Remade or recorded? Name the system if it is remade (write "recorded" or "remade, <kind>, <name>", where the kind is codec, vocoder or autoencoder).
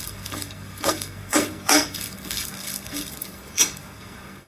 remade, codec, SNAC